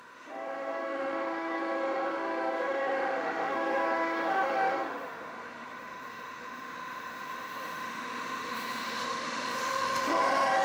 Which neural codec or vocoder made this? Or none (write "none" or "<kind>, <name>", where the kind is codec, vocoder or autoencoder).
autoencoder, DAC-VAE